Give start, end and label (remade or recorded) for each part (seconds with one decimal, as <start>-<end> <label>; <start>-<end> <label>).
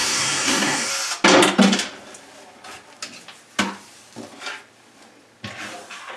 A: 0.0-0.9 remade; 0.9-6.2 recorded